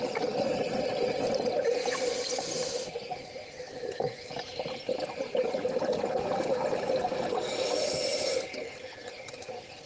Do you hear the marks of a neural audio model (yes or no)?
no